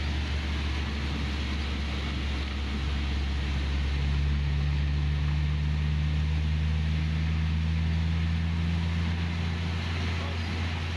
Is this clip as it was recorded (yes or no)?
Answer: yes